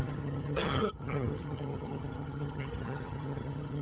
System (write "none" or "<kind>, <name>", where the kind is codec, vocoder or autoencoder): vocoder, HiFi-GAN